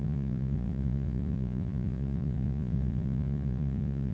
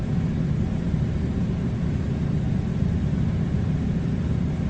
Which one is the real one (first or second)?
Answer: second